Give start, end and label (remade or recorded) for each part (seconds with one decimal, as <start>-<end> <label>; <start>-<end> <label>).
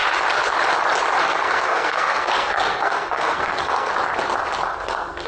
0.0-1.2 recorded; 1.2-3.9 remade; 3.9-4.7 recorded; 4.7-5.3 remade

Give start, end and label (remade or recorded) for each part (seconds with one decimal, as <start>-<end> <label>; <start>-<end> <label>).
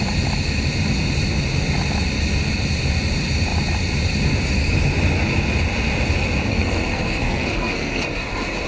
0.0-6.5 recorded; 6.5-8.1 remade; 8.1-8.7 recorded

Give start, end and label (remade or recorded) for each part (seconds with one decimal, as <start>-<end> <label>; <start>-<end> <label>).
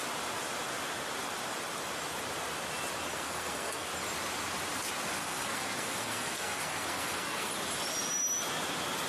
0.0-3.1 recorded; 3.1-3.9 remade; 3.9-5.2 recorded; 5.2-7.5 remade; 7.5-9.1 recorded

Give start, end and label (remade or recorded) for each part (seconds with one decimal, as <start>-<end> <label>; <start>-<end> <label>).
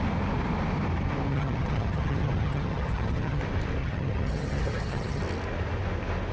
0.0-1.3 recorded; 1.3-3.4 remade; 3.4-3.8 recorded; 3.8-5.2 remade; 5.2-6.3 recorded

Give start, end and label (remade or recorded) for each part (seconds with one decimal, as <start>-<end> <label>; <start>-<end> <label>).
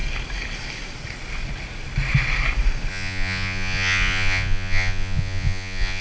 0.0-2.9 recorded; 2.9-6.0 remade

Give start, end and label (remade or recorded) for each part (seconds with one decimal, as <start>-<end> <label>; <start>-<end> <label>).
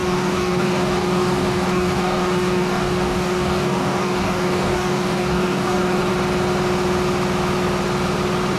0.0-6.1 remade; 6.1-8.6 recorded